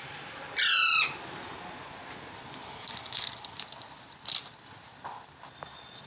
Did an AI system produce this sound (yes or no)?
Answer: no